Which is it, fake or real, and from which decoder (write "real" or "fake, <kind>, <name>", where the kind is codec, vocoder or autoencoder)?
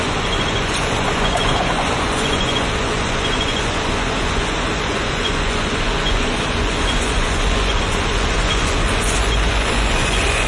fake, vocoder, Vocos